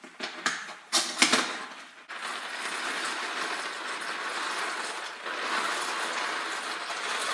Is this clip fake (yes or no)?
no